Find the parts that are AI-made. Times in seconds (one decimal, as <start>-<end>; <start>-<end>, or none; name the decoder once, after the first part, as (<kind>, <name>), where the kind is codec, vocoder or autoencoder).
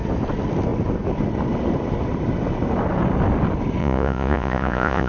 3.8-5.1 (vocoder, Vocos)